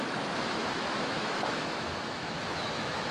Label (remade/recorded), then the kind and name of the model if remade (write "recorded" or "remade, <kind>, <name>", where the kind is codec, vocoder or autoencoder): remade, autoencoder, DAC-VAE